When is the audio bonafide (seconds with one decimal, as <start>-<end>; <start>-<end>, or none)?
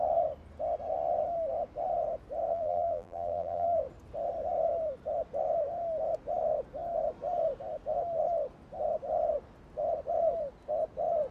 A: 0.0-2.5; 3.8-11.3